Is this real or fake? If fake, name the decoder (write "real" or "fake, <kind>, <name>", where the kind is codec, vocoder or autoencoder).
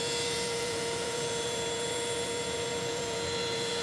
fake, vocoder, Vocos